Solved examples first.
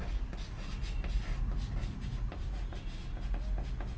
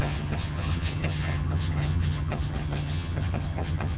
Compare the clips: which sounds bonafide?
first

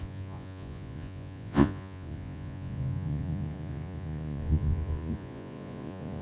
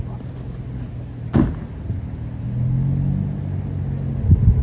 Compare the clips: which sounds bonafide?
second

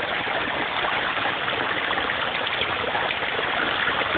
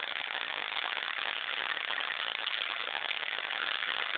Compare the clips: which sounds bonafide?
first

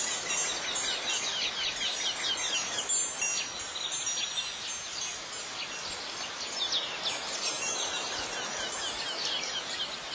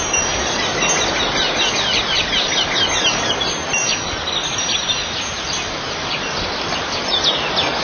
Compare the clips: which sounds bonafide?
first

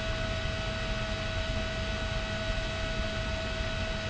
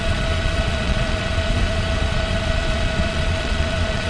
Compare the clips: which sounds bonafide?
first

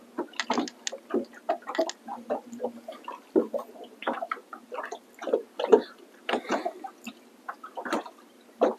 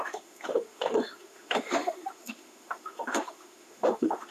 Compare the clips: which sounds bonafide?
first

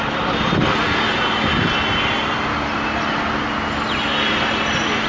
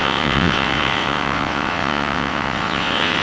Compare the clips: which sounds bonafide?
first